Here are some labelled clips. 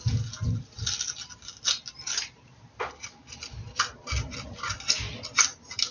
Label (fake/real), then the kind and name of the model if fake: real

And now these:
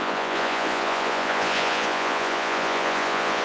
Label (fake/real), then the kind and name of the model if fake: fake, vocoder, Vocos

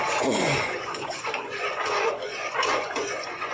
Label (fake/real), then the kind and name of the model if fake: fake, vocoder, Vocos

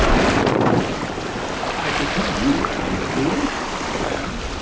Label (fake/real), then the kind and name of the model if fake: real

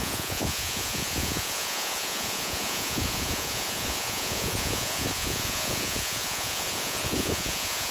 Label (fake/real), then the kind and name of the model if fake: fake, vocoder, Vocos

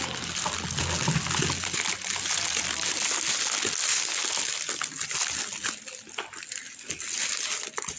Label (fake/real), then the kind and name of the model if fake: real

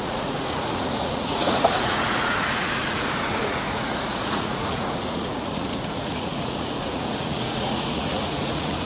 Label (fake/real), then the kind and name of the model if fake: fake, vocoder, Vocos